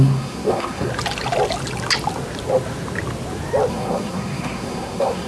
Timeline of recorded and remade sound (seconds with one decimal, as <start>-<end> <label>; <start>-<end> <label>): 0.0-0.9 remade; 0.9-3.7 recorded; 3.7-5.3 remade